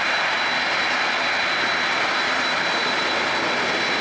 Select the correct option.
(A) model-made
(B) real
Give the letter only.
B